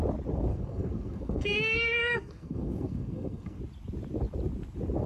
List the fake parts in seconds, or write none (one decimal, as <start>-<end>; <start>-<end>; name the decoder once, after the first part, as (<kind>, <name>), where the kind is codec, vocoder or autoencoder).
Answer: 0.5-3.6 (codec, SNAC)